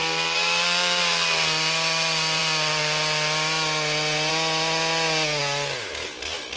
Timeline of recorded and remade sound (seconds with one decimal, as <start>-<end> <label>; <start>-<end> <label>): 0.0-1.0 remade; 1.0-6.6 recorded